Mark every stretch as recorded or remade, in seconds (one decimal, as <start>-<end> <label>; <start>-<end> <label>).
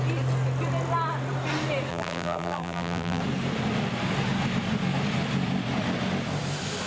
0.0-1.9 recorded; 1.9-3.2 remade; 3.2-6.9 recorded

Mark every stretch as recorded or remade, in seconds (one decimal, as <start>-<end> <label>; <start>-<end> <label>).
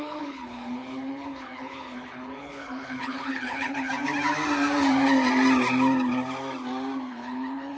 0.0-3.9 remade; 3.9-7.1 recorded; 7.1-7.8 remade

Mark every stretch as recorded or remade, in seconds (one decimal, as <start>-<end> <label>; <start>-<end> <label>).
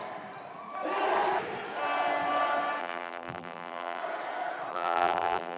0.0-2.8 recorded; 2.8-4.0 remade; 4.0-4.7 recorded; 4.7-5.6 remade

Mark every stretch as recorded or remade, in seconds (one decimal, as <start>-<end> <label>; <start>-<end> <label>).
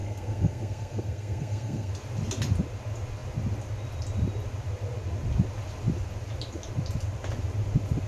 0.0-1.9 remade; 1.9-8.1 recorded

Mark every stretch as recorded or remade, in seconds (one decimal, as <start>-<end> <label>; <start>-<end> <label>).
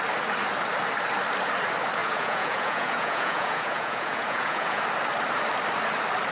0.0-2.0 recorded; 2.0-4.8 remade; 4.8-6.3 recorded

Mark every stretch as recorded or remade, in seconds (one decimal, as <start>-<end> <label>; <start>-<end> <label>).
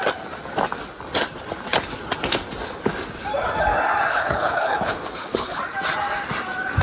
0.0-4.1 recorded; 4.1-5.6 remade; 5.6-6.8 recorded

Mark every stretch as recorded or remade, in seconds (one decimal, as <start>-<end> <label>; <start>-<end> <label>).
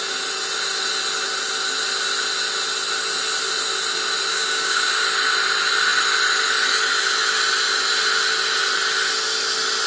0.0-4.3 recorded; 4.3-4.9 remade; 4.9-9.9 recorded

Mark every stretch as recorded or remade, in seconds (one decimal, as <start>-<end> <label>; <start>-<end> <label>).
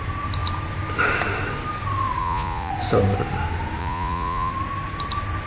0.0-2.2 recorded; 2.2-2.7 remade; 2.7-3.8 recorded; 3.8-4.5 remade; 4.5-5.5 recorded